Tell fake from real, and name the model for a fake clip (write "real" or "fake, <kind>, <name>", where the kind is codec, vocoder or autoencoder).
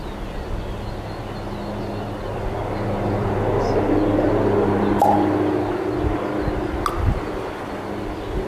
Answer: real